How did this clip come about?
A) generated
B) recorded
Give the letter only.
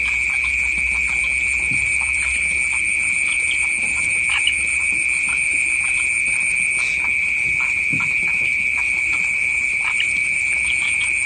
A